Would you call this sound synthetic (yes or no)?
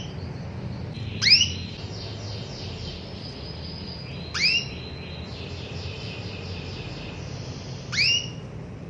no